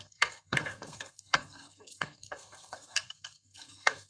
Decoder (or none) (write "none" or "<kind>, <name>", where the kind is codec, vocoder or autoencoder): codec, SNAC